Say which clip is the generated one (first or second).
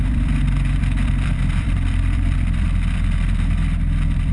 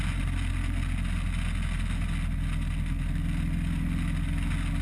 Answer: first